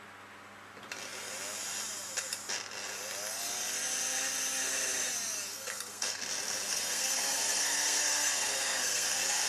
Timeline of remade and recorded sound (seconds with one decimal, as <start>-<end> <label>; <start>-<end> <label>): 0.0-5.5 recorded; 5.5-6.2 remade; 6.2-6.7 recorded; 6.7-9.5 remade